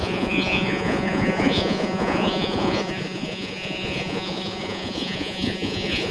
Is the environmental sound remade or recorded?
remade